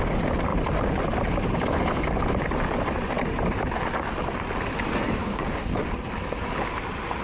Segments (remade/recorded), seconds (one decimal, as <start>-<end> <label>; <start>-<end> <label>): 0.0-5.2 recorded; 5.2-5.8 remade; 5.8-7.2 recorded